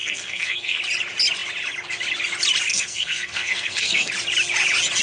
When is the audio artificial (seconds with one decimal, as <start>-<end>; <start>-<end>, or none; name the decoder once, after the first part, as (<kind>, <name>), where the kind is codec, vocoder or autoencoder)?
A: 0.0-0.8 (codec, SNAC); 2.7-4.1